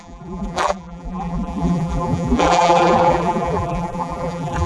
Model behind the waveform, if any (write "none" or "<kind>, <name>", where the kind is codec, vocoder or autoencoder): vocoder, BigVGAN v2